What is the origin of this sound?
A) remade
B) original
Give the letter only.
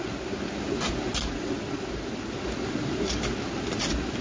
B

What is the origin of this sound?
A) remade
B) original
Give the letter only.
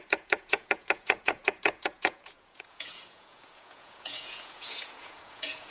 A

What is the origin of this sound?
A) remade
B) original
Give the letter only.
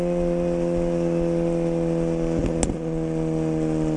B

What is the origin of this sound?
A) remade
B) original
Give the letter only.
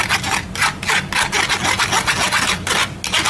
B